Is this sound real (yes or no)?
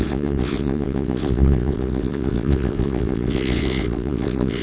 no